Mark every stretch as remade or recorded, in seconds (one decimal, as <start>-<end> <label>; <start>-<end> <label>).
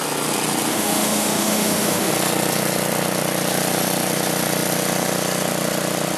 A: 0.0-0.7 recorded; 0.7-2.1 remade; 2.1-6.2 recorded